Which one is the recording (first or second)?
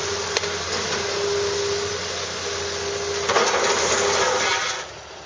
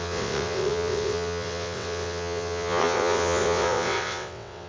first